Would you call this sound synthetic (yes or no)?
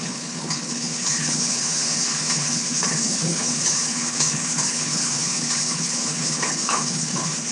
yes